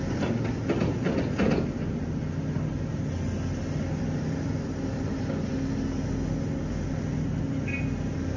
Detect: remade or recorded recorded